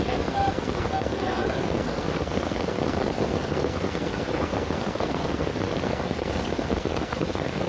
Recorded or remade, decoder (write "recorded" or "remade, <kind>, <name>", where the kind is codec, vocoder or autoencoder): remade, codec, SNAC